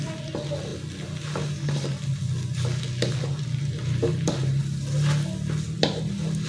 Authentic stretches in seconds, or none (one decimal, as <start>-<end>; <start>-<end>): 0.0-6.5